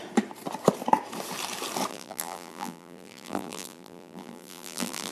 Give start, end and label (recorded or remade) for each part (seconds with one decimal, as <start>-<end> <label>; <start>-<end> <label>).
0.0-1.9 recorded; 1.9-5.1 remade